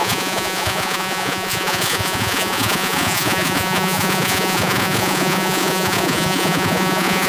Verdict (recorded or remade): remade